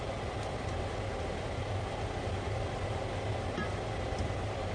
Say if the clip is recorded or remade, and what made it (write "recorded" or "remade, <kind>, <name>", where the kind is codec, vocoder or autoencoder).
recorded